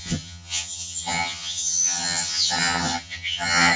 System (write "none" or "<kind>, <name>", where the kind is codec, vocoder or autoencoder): vocoder, HiFi-GAN